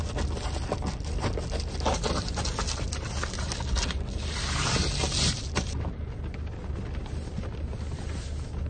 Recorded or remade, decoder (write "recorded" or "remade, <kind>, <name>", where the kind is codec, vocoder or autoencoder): recorded